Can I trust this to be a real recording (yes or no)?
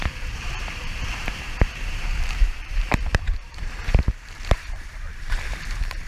no